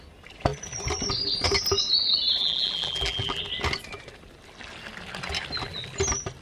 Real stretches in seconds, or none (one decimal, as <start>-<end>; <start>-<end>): 0.0-2.4; 3.4-6.4